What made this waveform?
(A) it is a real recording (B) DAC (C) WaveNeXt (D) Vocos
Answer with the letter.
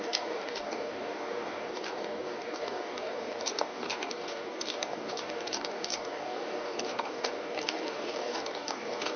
B